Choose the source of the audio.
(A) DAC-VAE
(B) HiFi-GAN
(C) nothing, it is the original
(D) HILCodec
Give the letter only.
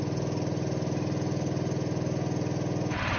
C